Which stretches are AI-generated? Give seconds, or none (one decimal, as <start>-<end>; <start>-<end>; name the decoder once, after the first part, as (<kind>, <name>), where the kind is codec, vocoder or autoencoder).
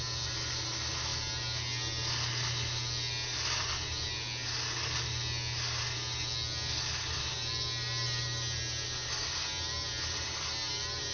none